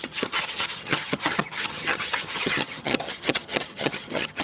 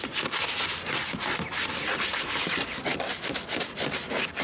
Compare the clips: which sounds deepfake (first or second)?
first